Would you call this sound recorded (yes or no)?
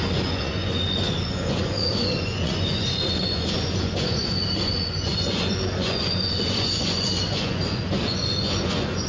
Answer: no